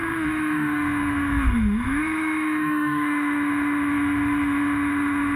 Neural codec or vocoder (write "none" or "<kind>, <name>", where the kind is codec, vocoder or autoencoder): autoencoder, DAC-VAE